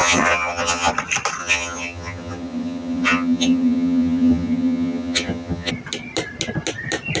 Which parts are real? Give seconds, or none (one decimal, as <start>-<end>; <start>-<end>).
0.9-1.4; 5.7-7.2